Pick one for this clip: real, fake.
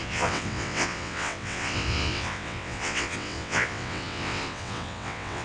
fake